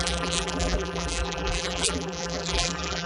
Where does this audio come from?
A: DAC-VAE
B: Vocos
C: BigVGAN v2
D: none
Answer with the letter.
C